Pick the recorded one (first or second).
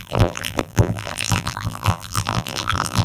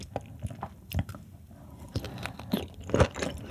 second